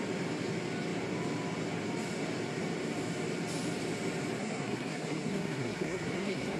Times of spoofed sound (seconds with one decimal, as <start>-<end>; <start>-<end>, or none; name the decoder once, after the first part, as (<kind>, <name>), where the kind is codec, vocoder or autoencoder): 4.4-6.6 (codec, SNAC)